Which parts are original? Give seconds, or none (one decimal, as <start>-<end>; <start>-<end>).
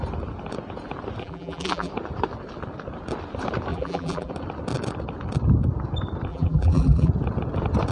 0.0-1.2; 1.9-3.7; 4.3-6.3; 7.1-7.9